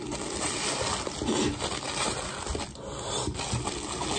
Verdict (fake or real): real